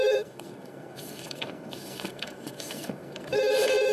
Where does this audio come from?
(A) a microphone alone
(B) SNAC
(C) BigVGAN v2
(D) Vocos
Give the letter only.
B